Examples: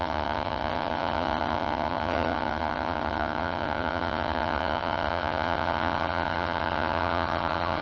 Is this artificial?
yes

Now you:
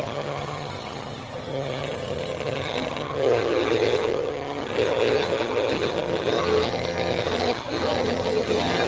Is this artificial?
yes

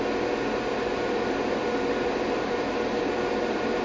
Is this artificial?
no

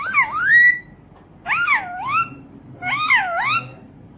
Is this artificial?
no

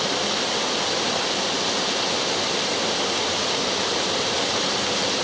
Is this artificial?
no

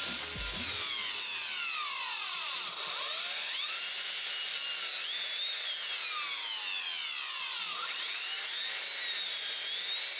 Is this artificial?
no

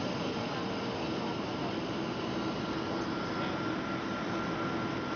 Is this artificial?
no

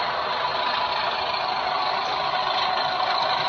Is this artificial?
no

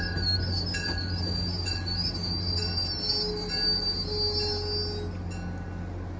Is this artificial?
no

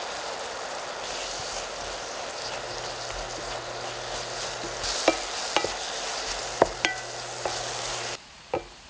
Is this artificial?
no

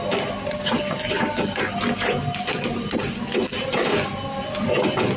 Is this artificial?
no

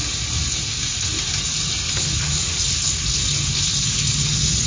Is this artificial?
no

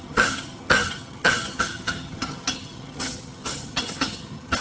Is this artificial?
yes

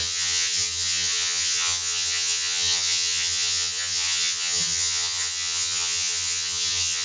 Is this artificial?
yes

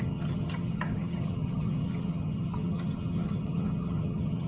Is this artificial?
yes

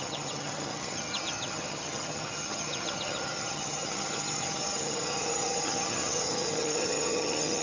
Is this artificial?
yes